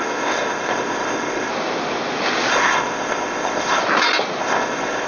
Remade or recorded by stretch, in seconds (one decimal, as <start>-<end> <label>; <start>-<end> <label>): 0.0-1.5 remade; 1.5-2.5 recorded; 2.5-3.8 remade; 3.8-4.4 recorded; 4.4-5.1 remade